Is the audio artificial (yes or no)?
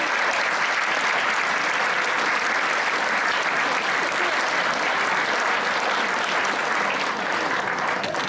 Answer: no